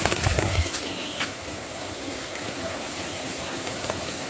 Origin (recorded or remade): remade